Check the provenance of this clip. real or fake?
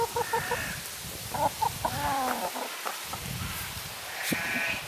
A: fake